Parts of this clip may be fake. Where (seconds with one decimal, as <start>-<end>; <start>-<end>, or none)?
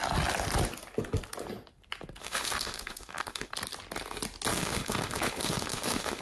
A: 2.2-3.5; 4.5-6.2